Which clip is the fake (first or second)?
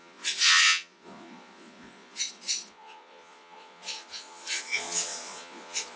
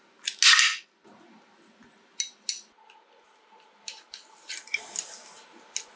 first